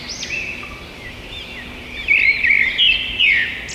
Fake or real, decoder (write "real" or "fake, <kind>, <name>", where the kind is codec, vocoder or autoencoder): real